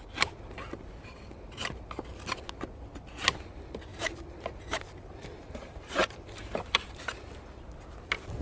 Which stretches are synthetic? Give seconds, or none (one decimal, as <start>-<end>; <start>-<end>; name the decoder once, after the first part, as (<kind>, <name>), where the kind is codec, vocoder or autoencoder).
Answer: 3.9-4.8 (vocoder, BigVGAN v2); 5.2-7.1